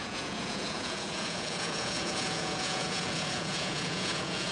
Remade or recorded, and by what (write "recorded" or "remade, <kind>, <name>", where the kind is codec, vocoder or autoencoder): remade, vocoder, Vocos